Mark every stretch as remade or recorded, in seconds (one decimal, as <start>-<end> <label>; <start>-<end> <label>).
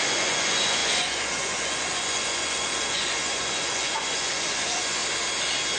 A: 0.0-5.0 remade; 5.0-5.8 recorded